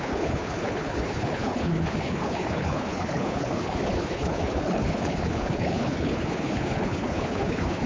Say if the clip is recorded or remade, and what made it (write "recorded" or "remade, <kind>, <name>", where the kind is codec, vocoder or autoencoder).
remade, codec, HILCodec